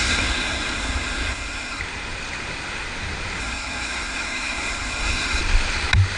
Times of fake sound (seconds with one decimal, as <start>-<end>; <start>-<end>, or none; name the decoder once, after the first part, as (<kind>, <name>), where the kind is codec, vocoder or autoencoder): 0.0-1.8 (codec, SNAC); 3.4-5.4